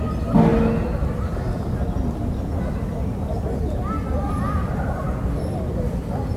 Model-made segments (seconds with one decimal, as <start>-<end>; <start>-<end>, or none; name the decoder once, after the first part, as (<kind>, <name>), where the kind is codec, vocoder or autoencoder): none